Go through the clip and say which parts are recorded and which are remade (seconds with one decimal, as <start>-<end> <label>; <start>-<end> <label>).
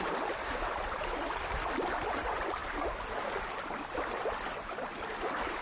0.0-5.6 recorded